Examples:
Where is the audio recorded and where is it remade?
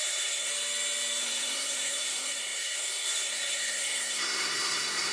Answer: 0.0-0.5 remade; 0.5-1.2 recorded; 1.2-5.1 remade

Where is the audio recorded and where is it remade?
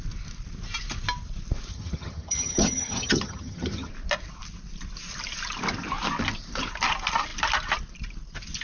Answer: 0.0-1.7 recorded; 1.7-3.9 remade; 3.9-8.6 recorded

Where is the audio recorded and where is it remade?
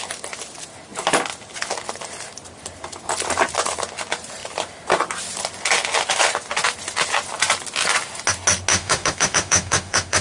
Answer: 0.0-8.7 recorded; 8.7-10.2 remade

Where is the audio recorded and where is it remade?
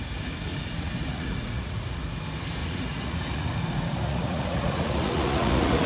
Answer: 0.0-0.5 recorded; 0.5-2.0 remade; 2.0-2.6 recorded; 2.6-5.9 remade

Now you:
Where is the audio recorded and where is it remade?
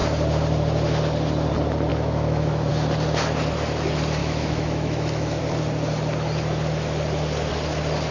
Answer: 0.0-1.9 recorded; 1.9-2.7 remade; 2.7-4.2 recorded; 4.2-5.4 remade; 5.4-8.1 recorded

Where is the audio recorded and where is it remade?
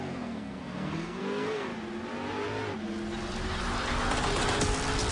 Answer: 0.0-1.7 remade; 1.7-5.1 recorded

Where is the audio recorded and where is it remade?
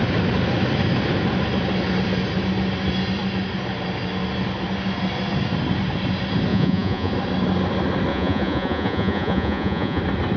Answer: 0.0-6.5 recorded; 6.5-7.1 remade; 7.1-8.1 recorded; 8.1-10.0 remade; 10.0-10.4 recorded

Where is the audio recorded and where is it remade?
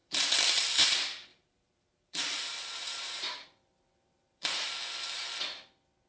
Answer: 0.0-0.7 remade; 0.7-1.3 recorded; 1.3-4.7 remade; 4.7-6.1 recorded